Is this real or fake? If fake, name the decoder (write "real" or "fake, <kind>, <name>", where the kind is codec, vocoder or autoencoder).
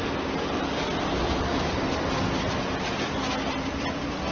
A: real